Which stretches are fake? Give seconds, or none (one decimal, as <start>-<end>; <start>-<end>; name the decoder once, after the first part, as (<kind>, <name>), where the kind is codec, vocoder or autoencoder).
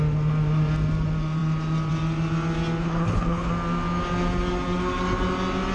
2.8-3.5 (codec, HILCodec)